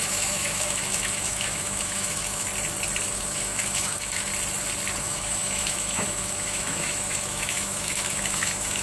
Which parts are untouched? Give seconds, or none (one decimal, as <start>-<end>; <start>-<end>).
2.5-3.1; 4.3-5.0